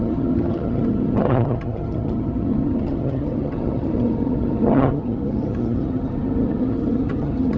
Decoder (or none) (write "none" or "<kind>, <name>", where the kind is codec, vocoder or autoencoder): vocoder, HiFi-GAN